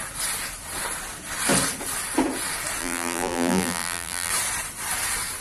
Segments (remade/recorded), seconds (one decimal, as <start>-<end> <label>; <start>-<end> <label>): 0.0-2.8 recorded; 2.8-4.3 remade; 4.3-5.4 recorded